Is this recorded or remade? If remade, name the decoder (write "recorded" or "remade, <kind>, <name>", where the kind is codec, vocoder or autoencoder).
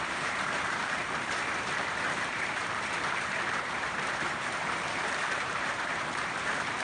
remade, vocoder, BigVGAN v2